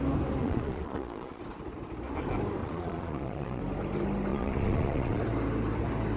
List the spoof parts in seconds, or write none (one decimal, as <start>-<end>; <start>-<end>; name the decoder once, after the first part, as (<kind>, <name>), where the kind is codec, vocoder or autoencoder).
0.4-1.4 (vocoder, Vocos); 2.6-3.6; 4.3-5.2